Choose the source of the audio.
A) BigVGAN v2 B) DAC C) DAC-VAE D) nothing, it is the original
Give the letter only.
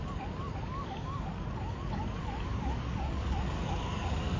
B